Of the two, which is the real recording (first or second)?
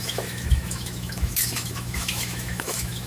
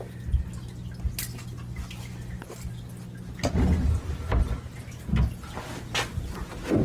second